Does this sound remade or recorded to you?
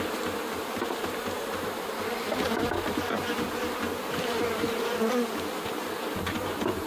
remade